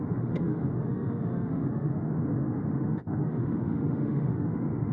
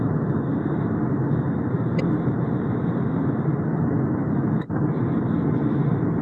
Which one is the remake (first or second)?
first